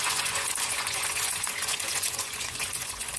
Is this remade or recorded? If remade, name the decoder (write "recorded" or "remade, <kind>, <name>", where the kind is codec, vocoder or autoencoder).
remade, vocoder, Vocos